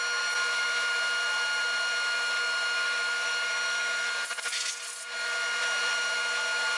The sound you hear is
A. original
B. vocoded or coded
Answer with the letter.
A